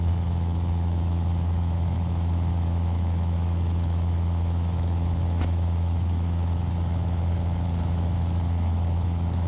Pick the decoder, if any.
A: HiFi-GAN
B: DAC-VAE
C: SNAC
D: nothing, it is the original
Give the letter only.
B